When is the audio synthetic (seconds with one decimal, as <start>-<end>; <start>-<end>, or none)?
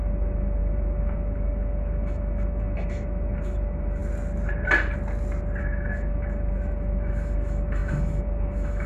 0.0-4.0; 5.6-8.9